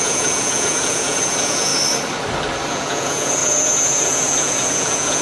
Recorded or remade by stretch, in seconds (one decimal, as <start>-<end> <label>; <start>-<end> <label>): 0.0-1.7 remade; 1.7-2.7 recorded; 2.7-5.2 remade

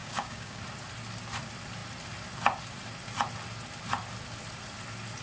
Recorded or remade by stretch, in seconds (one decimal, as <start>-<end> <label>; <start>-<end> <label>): 0.0-0.6 remade; 0.6-5.2 recorded

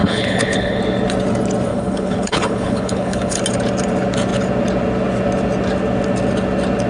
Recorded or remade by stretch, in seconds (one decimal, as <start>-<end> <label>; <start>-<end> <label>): 0.0-0.8 remade; 0.8-1.7 recorded; 1.7-3.4 remade; 3.4-6.9 recorded

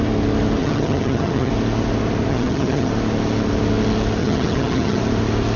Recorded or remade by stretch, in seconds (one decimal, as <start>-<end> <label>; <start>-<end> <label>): 0.0-0.6 recorded; 0.6-1.5 remade; 1.5-2.3 recorded; 2.3-2.9 remade; 2.9-4.2 recorded; 4.2-5.0 remade; 5.0-5.6 recorded

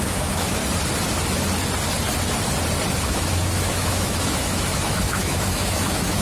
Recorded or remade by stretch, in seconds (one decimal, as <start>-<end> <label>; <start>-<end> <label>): 0.0-0.6 remade; 0.6-3.0 recorded; 3.0-6.2 remade

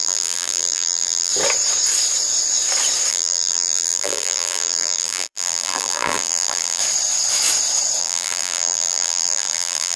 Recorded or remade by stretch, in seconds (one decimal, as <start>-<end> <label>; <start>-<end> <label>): 0.0-1.3 remade; 1.3-3.1 recorded; 3.1-6.8 remade; 6.8-8.0 recorded; 8.0-10.0 remade